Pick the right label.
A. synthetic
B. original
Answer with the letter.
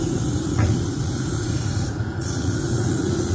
A